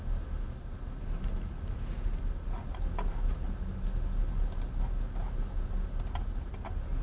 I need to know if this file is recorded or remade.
recorded